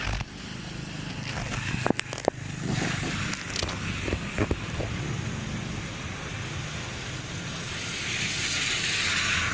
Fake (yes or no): no